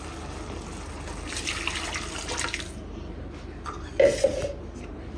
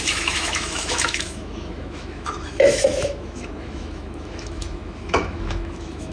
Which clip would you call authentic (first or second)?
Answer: first